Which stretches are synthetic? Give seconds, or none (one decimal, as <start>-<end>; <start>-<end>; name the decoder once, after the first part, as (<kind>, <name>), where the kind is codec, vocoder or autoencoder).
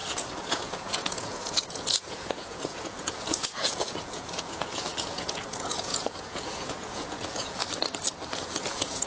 0.0-7.6 (vocoder, Vocos); 8.4-9.1